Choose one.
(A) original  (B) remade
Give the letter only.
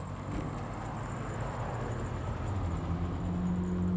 A